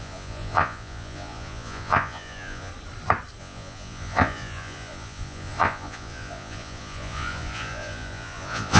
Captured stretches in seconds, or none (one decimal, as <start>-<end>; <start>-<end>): 2.7-3.4